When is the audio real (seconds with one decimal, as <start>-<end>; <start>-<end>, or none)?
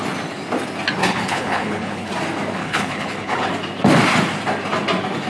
0.0-1.0; 2.1-2.6; 3.5-5.3